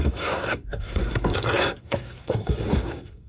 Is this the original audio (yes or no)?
no